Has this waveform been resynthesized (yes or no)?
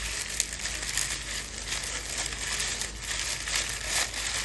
no